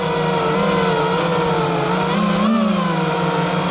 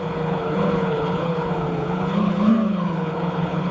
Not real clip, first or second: second